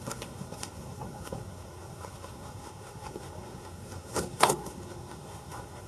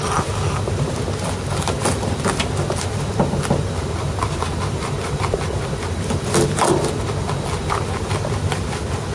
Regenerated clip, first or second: first